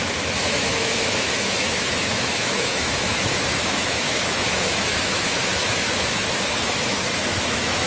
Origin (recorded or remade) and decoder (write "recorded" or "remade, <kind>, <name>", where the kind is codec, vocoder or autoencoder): remade, autoencoder, DAC-VAE